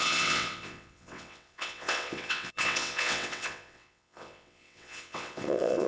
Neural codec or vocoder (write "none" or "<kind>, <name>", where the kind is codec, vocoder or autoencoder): vocoder, WaveNeXt